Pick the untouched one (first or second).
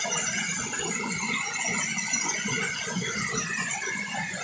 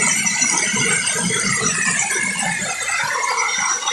second